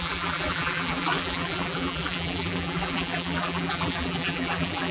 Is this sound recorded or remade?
remade